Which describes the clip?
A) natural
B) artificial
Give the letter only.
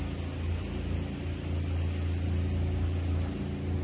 A